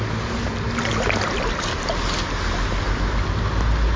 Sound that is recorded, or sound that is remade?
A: recorded